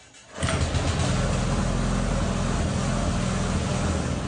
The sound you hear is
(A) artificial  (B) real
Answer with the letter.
B